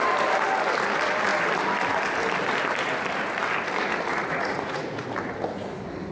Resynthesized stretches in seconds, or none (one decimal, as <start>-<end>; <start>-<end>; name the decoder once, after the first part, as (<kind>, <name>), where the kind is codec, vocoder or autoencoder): 4.1-5.0 (vocoder, Vocos)